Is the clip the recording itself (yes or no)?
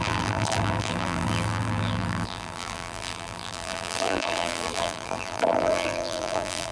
no